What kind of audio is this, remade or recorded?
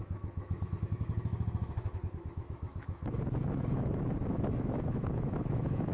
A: remade